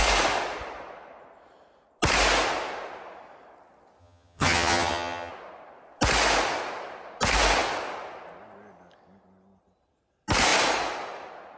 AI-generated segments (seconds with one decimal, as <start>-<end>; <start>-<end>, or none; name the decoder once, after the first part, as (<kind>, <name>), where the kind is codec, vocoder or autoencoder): 4.0-5.3 (vocoder, HiFi-GAN)